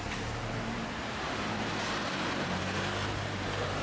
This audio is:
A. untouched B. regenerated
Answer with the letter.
B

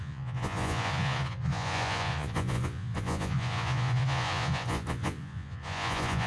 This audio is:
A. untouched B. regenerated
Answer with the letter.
B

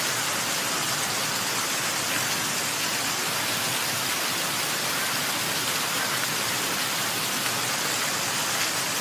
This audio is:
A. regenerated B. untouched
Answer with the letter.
B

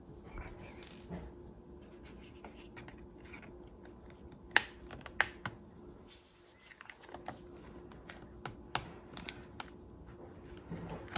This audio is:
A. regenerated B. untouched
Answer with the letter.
B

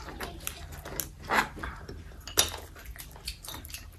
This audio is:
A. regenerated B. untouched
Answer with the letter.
B